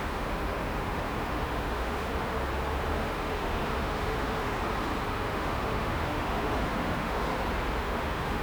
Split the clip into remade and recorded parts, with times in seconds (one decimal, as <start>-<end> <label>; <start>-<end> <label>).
0.0-2.1 remade; 2.1-2.9 recorded; 2.9-4.6 remade; 4.6-5.1 recorded; 5.1-7.3 remade; 7.3-7.8 recorded; 7.8-8.4 remade